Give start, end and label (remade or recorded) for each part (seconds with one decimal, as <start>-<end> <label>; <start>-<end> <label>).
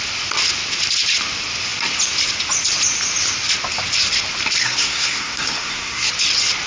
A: 0.0-4.6 recorded; 4.6-6.1 remade; 6.1-6.7 recorded